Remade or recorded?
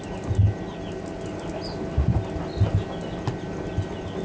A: recorded